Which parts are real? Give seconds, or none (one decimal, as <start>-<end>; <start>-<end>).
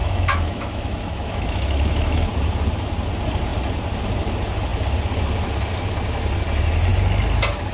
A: 2.3-7.7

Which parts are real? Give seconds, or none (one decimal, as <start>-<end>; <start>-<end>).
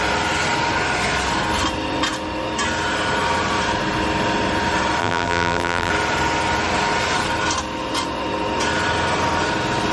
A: 0.0-5.0; 5.9-9.9